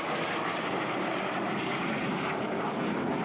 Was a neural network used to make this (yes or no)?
no